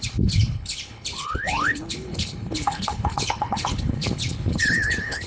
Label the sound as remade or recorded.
remade